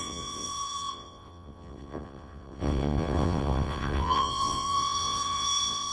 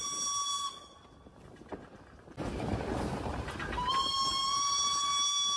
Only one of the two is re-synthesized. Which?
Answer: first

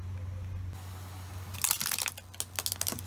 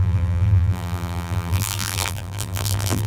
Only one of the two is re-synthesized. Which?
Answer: second